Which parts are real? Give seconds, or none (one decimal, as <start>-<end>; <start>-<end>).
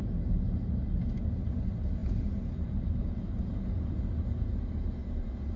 0.0-2.0; 4.0-5.0